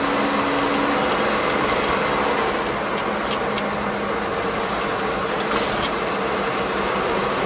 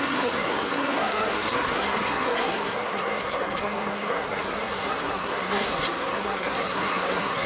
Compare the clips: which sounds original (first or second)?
first